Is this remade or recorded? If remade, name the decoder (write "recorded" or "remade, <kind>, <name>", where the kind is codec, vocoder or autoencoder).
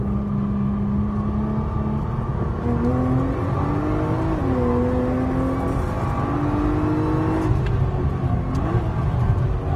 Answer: recorded